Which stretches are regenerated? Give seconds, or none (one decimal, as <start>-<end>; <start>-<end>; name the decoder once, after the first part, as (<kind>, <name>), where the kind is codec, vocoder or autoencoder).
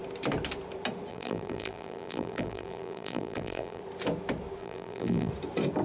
1.1-3.8 (vocoder, BigVGAN v2); 4.6-5.3